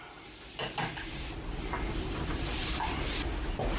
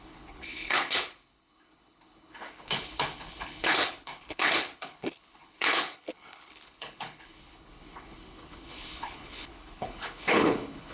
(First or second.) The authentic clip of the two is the first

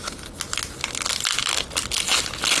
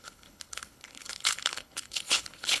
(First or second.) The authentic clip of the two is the first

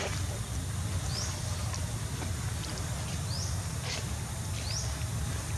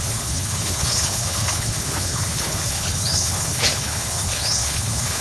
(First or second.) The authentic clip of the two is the first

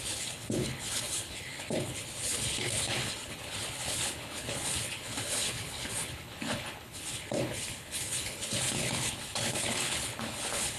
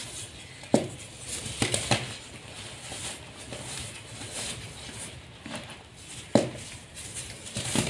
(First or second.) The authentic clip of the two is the second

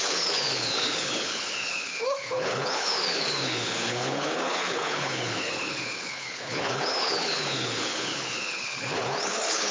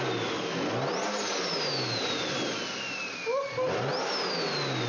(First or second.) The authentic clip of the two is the second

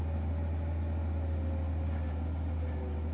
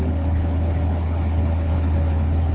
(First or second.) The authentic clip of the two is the first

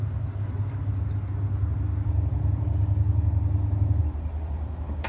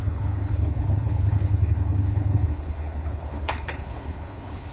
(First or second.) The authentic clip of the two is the first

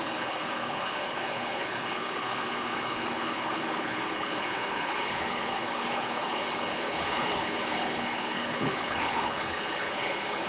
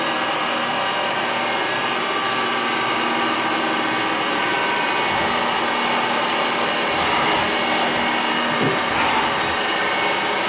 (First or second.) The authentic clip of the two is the second